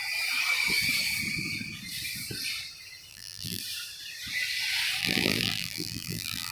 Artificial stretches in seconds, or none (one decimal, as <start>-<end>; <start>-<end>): 3.1-3.6; 5.0-6.5